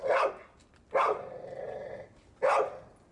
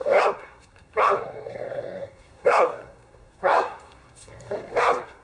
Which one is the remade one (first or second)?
second